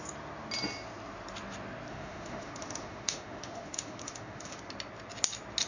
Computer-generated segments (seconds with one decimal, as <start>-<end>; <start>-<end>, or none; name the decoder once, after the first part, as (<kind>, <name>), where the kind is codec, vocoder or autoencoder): 1.9-4.6 (autoencoder, DAC-VAE)

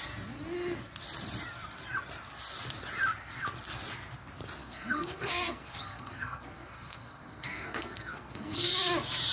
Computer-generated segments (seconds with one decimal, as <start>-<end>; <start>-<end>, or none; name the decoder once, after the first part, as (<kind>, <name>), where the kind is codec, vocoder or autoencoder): 4.6-8.7 (codec, SNAC)

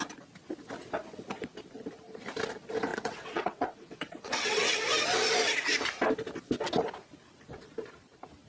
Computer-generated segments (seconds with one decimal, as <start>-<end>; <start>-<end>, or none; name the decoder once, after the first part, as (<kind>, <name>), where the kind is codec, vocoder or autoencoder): 2.9-4.8 (vocoder, WaveNeXt)

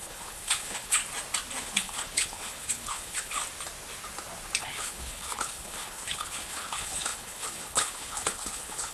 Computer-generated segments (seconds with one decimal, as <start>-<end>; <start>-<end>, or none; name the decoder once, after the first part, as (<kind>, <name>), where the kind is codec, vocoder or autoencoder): 0.0-1.0 (codec, HILCodec); 1.6-3.4; 4.6-8.9

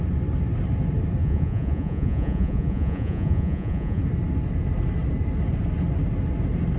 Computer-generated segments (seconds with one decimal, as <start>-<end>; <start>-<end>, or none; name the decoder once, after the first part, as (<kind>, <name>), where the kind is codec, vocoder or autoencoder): 1.2-4.0 (vocoder, Vocos)

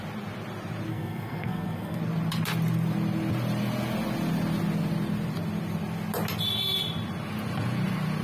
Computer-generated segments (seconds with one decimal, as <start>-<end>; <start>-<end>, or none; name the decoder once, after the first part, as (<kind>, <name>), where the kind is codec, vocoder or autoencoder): 0.9-2.0 (codec, SNAC)

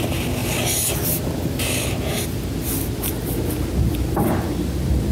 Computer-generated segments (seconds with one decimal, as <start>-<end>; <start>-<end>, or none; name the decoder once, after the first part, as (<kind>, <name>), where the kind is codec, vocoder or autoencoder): none